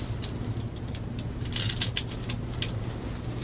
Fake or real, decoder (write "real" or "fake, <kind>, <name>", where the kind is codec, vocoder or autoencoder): real